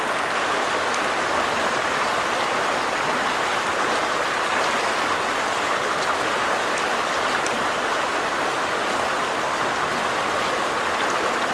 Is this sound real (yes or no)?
yes